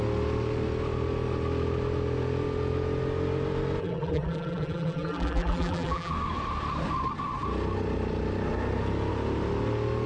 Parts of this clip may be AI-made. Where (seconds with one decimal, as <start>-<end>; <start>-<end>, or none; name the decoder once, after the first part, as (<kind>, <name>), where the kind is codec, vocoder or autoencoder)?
3.8-6.1 (vocoder, BigVGAN v2)